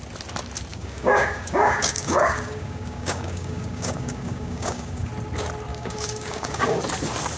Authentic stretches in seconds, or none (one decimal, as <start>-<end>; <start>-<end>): 0.0-0.7; 5.1-5.7; 6.8-7.4